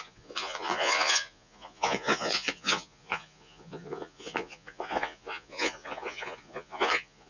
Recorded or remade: remade